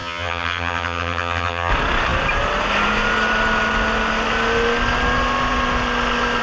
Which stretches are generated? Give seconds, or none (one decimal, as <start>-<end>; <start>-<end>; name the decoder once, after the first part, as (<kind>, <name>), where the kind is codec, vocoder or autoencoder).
0.0-1.7 (vocoder, HiFi-GAN)